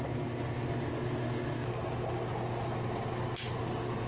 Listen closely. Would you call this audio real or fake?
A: real